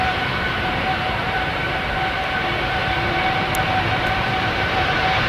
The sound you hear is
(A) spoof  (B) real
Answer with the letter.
A